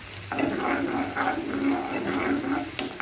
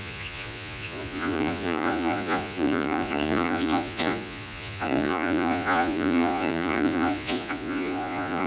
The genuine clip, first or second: first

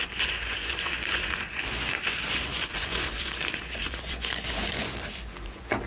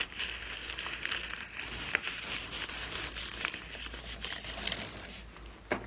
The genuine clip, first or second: second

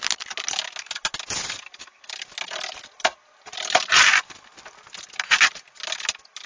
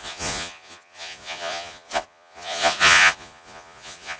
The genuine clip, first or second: first